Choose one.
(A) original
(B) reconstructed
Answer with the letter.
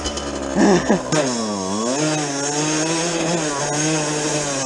A